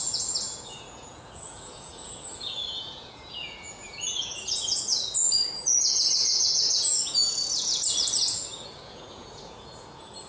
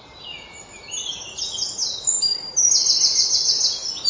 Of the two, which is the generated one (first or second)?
first